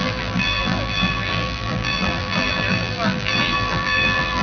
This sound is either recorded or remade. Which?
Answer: remade